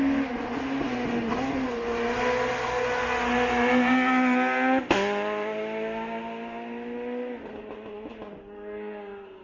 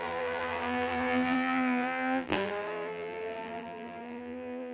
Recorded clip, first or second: first